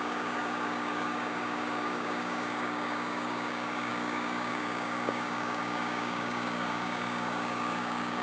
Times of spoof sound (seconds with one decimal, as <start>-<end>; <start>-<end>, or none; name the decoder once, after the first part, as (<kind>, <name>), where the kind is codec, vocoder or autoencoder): 0.0-8.2 (codec, DAC)